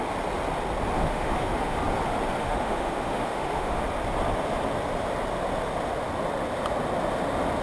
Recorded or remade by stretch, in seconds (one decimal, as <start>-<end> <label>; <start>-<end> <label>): 0.0-1.0 recorded; 1.0-1.8 remade; 1.8-2.4 recorded; 2.4-3.8 remade; 3.8-7.6 recorded